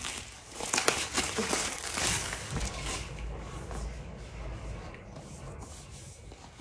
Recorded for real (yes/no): no